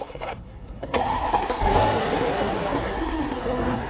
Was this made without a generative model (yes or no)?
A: no